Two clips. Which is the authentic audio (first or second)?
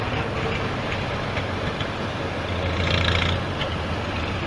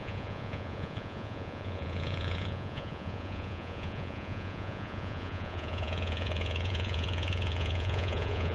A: first